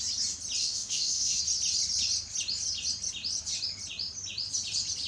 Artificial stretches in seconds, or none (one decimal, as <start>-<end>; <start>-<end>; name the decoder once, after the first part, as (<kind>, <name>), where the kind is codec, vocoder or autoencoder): 0.6-1.4 (autoencoder, DAC-VAE)